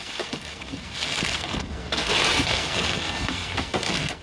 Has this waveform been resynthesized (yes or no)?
yes